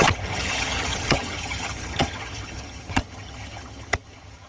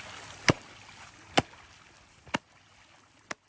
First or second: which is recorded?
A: second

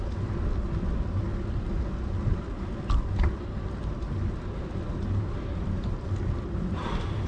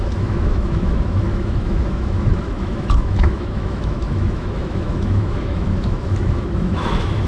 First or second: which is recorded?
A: first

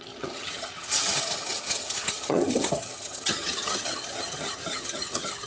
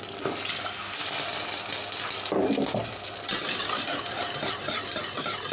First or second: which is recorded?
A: second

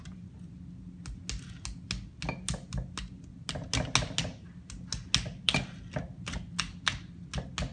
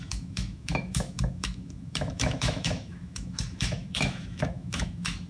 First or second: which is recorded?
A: first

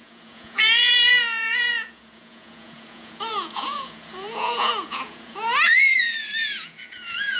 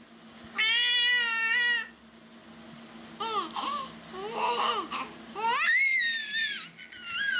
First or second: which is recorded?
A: second